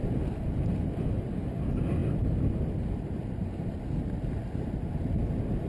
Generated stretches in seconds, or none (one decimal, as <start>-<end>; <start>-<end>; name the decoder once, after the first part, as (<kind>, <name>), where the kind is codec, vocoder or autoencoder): none